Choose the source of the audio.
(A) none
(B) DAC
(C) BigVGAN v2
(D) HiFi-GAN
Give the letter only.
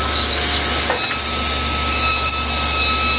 A